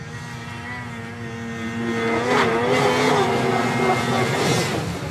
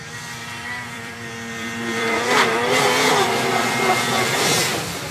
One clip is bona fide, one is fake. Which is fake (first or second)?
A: second